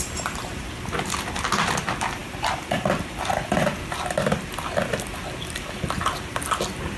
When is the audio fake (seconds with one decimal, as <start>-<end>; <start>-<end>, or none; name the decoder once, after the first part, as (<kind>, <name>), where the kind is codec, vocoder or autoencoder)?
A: none